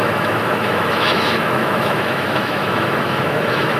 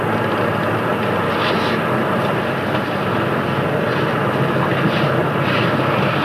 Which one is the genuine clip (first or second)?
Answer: second